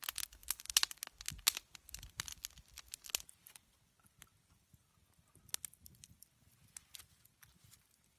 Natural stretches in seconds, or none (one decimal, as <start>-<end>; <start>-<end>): 0.0-8.2